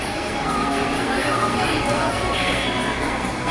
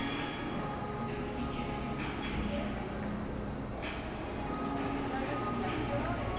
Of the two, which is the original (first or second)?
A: second